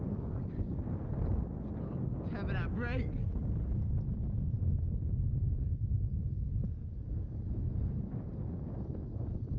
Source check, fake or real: real